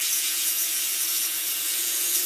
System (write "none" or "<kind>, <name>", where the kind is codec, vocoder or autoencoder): vocoder, Vocos